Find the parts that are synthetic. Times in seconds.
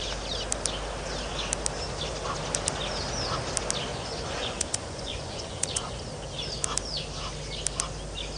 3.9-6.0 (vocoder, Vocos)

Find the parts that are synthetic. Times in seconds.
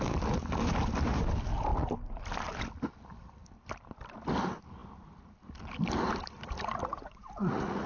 6.9-7.9 (vocoder, Vocos)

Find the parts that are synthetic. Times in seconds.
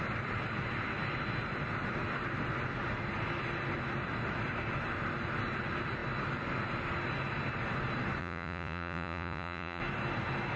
8.2-9.8 (vocoder, Vocos)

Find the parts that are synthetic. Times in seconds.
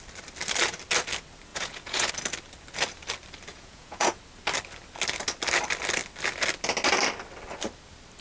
1.5-2.1 (vocoder, Vocos); 3.5-4.2